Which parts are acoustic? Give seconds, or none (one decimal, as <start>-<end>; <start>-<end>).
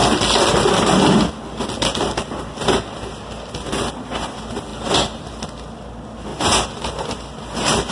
0.0-4.7; 5.3-6.3